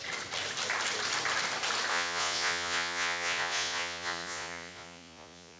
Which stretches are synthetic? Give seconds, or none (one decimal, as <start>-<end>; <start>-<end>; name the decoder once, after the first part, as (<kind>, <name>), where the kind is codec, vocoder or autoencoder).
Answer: 1.9-5.6 (vocoder, Vocos)